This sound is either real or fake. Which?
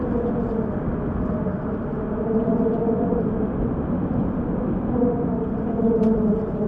real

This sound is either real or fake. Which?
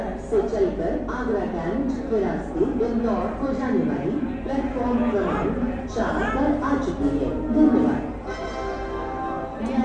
real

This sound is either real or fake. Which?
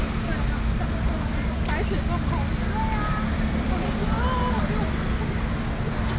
real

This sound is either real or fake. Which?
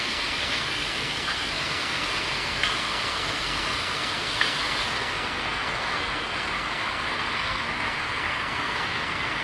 fake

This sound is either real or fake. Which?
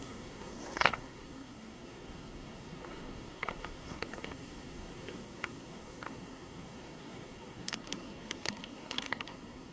fake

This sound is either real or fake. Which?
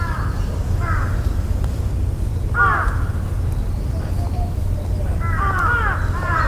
real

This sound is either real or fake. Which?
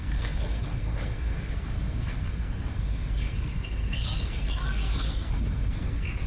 fake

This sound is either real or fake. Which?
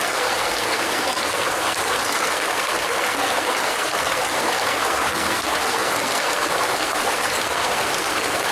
fake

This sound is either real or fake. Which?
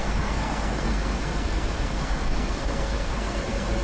fake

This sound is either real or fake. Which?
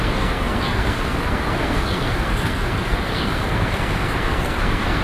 fake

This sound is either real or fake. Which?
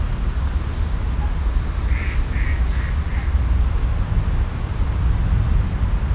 real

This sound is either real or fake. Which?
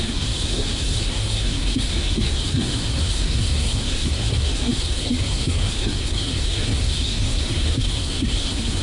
fake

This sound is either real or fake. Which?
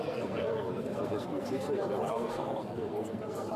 fake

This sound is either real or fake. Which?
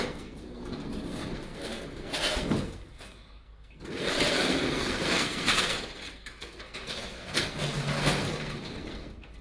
fake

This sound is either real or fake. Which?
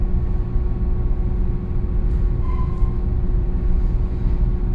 real